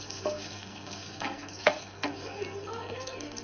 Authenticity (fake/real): fake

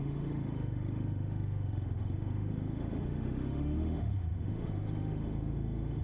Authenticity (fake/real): fake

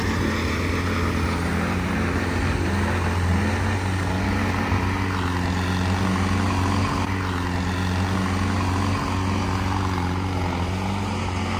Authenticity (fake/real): real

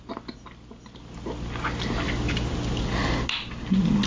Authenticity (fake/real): real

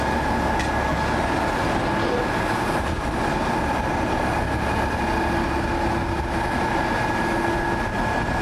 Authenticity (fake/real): real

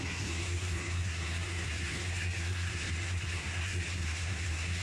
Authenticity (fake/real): fake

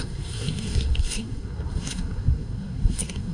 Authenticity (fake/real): fake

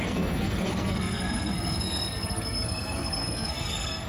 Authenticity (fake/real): fake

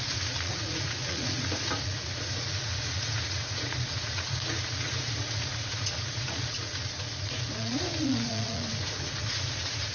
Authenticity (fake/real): fake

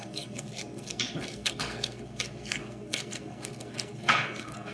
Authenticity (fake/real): fake